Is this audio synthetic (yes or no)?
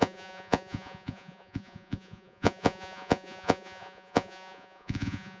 yes